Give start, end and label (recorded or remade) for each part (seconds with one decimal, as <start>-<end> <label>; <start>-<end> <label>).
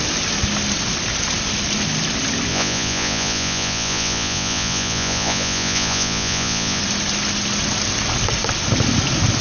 0.0-2.5 recorded; 2.5-6.8 remade; 6.8-9.4 recorded